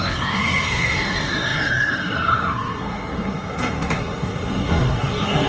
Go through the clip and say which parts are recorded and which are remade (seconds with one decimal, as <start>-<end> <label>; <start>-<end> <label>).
0.0-5.5 remade